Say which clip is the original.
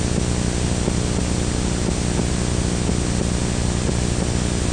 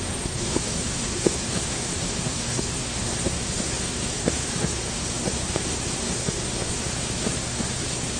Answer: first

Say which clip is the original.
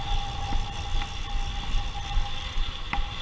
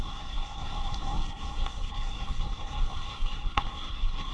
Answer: first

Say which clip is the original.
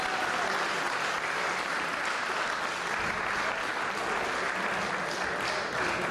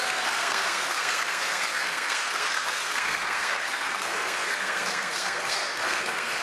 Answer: first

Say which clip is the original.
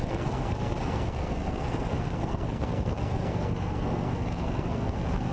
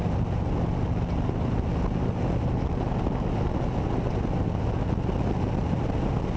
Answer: second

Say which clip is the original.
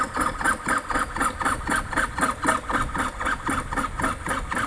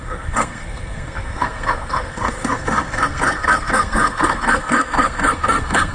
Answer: first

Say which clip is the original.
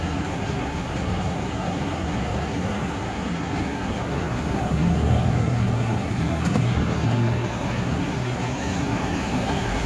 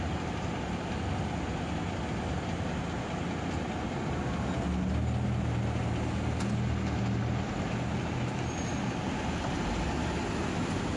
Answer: second